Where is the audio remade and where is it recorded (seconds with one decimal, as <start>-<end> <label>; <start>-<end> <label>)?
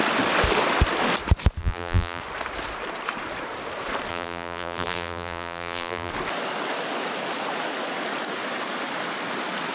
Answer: 0.0-1.6 recorded; 1.6-2.2 remade; 2.2-4.1 recorded; 4.1-6.1 remade; 6.1-9.7 recorded